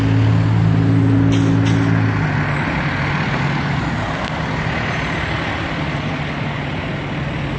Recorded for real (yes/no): yes